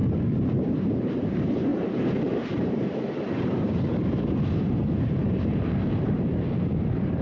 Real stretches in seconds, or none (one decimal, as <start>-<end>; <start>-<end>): 0.0-0.7